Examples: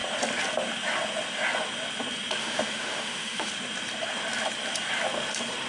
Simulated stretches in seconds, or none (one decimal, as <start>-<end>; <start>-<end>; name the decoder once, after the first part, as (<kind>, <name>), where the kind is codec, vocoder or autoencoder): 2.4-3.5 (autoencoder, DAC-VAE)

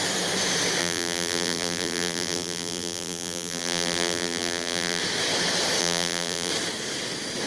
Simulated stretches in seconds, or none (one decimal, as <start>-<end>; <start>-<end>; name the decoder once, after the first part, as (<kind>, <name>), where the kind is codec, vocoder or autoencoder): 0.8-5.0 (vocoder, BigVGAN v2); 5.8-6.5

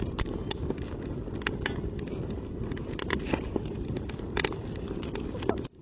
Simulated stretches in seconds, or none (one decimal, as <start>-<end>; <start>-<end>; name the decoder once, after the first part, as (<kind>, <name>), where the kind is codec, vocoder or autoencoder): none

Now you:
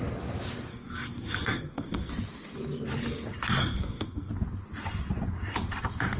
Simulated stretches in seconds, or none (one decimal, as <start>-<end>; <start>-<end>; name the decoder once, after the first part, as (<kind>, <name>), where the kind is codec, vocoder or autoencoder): 0.7-2.1 (codec, SNAC); 3.6-4.3